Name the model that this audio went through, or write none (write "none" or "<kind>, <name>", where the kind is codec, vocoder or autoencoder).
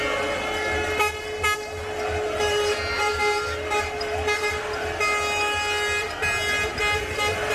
none